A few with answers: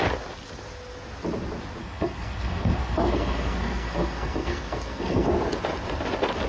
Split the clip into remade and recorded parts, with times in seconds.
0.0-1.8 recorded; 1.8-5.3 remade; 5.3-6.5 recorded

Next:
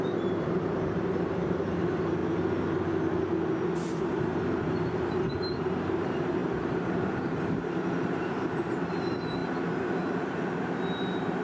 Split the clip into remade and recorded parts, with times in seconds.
0.0-2.2 remade; 2.2-4.0 recorded; 4.0-11.4 remade